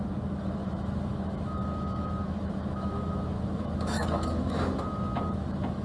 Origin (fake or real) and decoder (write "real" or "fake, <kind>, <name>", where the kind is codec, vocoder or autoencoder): fake, autoencoder, DAC-VAE